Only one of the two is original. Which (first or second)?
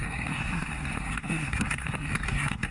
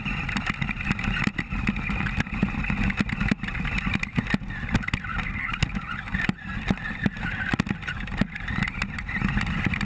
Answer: second